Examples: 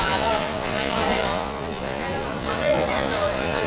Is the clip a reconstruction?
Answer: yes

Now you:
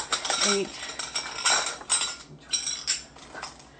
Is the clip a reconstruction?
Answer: no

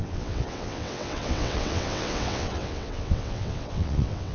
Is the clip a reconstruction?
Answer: yes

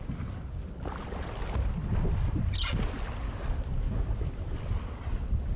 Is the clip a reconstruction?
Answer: no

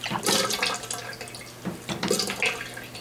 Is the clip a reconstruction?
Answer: no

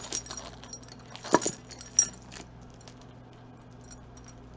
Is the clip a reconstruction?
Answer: no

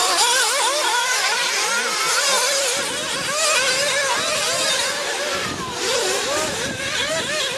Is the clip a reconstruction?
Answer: no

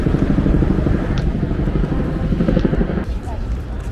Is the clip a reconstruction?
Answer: yes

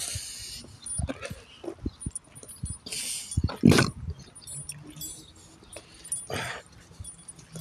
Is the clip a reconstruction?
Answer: no